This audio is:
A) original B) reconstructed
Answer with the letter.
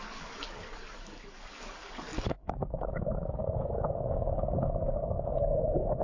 B